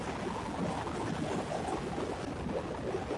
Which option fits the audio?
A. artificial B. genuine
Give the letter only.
B